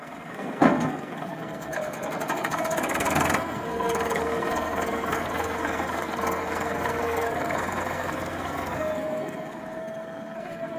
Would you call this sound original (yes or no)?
no